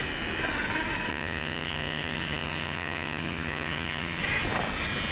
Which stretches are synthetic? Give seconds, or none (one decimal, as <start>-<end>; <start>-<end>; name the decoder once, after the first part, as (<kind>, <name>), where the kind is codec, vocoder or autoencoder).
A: 1.1-4.2 (vocoder, HiFi-GAN)